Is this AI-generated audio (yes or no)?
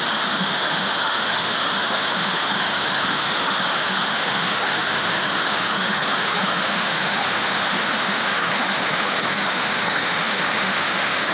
yes